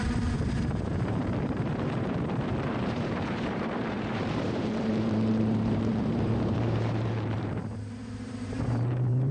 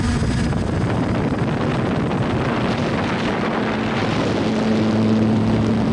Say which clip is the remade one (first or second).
first